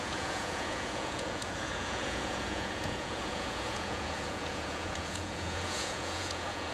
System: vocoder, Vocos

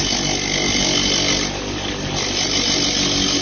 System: none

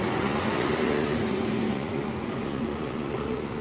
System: vocoder, Vocos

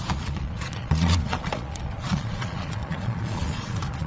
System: vocoder, Vocos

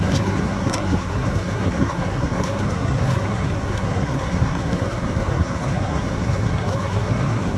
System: codec, SNAC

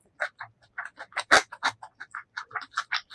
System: vocoder, BigVGAN v2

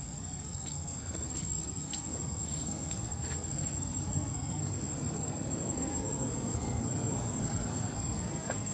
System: codec, SNAC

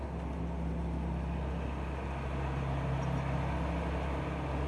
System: none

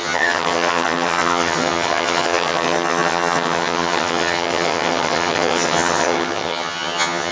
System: vocoder, HiFi-GAN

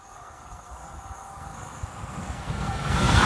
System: codec, SNAC